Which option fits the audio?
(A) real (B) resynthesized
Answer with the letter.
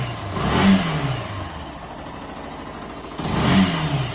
A